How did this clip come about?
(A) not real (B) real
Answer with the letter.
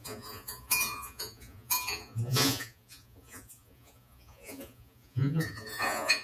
A